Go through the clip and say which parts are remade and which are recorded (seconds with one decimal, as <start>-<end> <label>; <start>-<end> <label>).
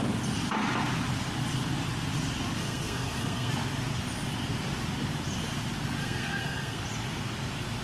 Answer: 0.0-2.6 recorded; 2.6-3.5 remade; 3.5-6.0 recorded; 6.0-6.8 remade; 6.8-7.8 recorded